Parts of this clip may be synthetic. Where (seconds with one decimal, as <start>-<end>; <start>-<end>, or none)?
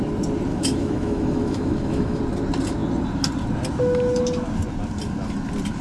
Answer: 0.5-2.2